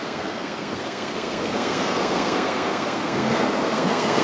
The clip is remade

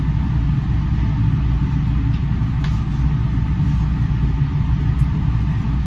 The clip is recorded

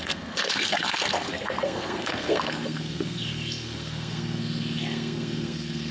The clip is remade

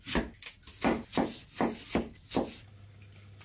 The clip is recorded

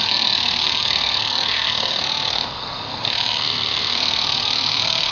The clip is remade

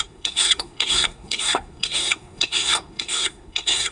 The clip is remade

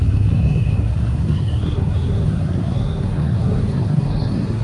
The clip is remade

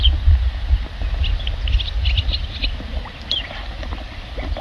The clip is recorded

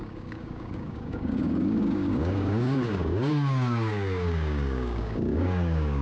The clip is remade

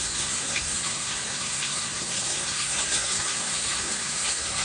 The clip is remade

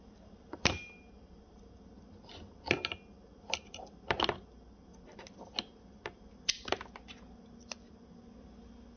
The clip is recorded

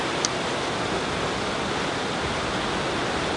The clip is recorded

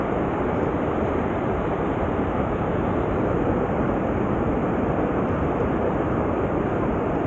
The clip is remade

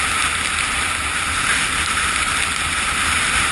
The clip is recorded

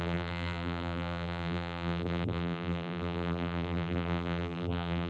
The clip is remade